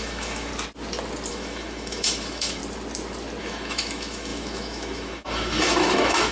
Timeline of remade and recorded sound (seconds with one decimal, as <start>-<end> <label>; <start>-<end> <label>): 0.0-0.5 remade; 0.5-1.3 recorded; 1.3-2.6 remade; 2.6-3.4 recorded; 3.4-6.3 remade